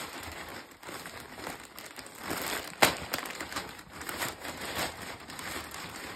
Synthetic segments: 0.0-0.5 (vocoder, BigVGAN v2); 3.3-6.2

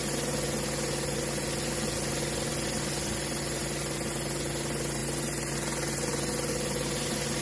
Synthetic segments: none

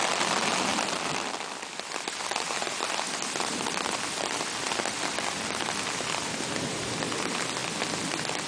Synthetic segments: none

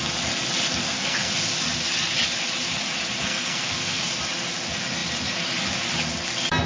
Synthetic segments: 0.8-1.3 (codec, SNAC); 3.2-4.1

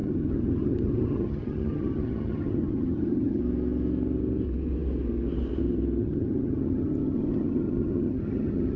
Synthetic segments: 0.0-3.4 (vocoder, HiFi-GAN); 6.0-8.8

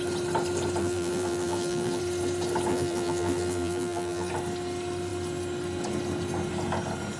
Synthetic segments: 0.8-2.0 (vocoder, BigVGAN v2); 2.7-4.3

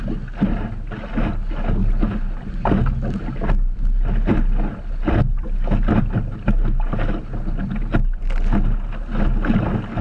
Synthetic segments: none